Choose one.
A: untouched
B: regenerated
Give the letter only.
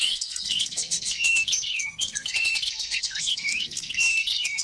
B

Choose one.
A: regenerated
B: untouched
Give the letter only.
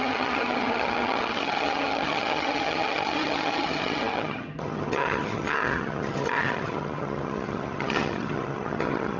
A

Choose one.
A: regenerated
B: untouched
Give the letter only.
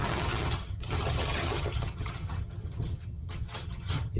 A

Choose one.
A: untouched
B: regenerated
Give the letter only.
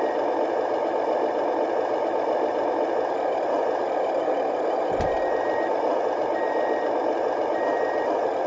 A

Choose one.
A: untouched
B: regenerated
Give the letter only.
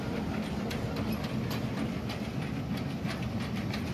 A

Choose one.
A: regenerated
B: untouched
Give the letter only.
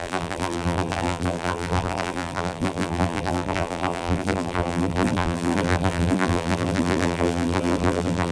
A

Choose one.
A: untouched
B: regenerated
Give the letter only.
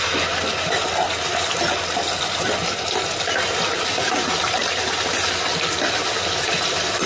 A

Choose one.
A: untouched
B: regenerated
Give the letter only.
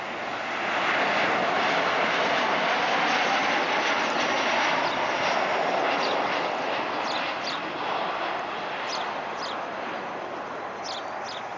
A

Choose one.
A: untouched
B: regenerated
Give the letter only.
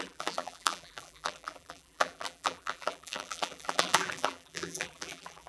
B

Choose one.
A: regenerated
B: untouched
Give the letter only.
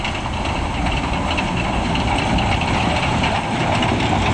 B